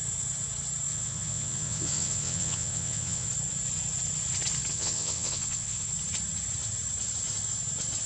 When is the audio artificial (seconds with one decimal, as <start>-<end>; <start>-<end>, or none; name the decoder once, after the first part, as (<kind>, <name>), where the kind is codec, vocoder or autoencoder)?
0.9-3.3 (vocoder, WaveNeXt); 4.7-5.9